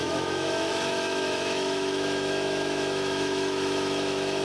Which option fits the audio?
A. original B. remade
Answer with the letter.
B